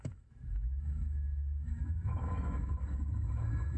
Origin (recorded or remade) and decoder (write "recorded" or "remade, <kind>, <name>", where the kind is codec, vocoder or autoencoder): remade, autoencoder, DAC-VAE